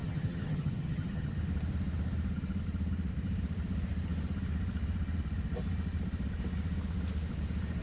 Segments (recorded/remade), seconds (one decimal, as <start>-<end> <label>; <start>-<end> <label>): 0.0-1.3 remade; 1.3-7.8 recorded